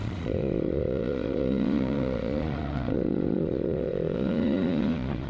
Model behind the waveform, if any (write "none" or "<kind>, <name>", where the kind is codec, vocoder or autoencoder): vocoder, Vocos